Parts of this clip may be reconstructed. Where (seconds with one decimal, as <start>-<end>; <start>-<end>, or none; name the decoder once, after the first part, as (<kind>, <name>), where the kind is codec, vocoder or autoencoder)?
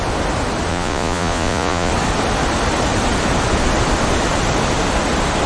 0.7-1.9 (vocoder, Vocos)